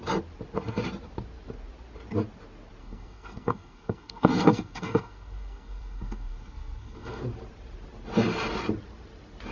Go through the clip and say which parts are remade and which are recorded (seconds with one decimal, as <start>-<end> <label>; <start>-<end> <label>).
0.0-2.8 recorded; 2.8-7.2 remade; 7.2-9.5 recorded